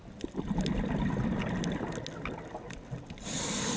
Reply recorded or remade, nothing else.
recorded